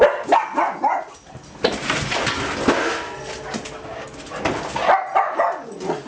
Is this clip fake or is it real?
real